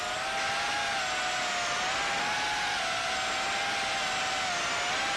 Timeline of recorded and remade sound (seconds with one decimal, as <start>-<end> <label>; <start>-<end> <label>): 0.0-5.2 recorded